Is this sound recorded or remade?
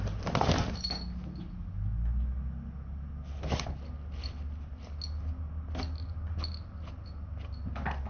recorded